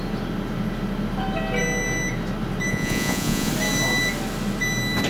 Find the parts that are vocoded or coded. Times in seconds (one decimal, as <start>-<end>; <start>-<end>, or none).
2.7-3.5